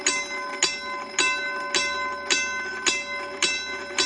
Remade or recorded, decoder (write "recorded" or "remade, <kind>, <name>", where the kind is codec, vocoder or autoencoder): recorded